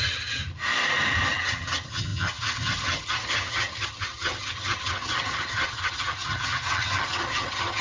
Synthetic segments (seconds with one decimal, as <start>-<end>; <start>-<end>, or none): 0.0-0.4; 1.3-7.8